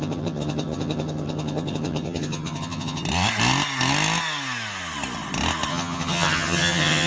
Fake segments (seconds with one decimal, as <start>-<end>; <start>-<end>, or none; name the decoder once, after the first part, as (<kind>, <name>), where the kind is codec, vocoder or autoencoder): 0.0-3.0 (vocoder, HiFi-GAN); 5.7-7.1